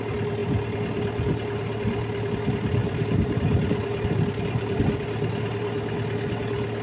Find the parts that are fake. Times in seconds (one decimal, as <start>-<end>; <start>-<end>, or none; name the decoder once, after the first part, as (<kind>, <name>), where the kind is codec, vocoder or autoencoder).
2.8-4.8 (vocoder, BigVGAN v2)